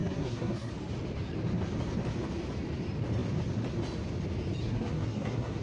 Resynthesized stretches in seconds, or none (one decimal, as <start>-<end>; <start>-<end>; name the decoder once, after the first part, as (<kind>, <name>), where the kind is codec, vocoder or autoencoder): 0.0-0.7 (codec, SNAC); 4.6-5.6